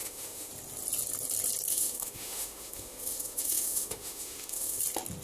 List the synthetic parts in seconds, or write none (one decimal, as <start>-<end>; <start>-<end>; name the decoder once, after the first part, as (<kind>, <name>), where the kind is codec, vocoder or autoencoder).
0.0-0.5 (autoencoder, DAC-VAE); 1.7-4.8